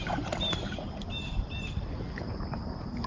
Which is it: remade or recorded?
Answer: remade